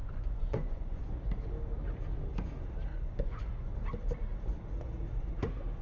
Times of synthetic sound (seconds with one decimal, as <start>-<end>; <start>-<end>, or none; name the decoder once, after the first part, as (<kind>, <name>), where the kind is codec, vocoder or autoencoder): 0.0-1.1 (vocoder, Vocos); 2.9-3.7